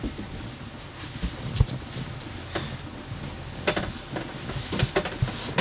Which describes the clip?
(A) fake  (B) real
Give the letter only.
B